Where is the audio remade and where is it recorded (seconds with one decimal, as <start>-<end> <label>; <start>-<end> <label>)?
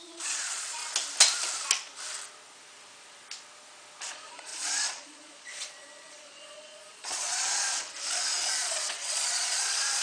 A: 0.0-0.8 remade; 0.8-4.1 recorded; 4.1-7.4 remade; 7.4-8.5 recorded; 8.5-10.0 remade